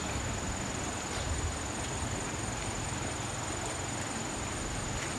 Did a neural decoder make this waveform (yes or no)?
no